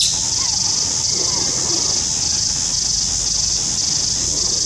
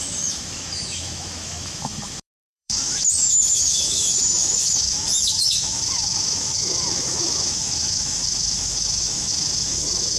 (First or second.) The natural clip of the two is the first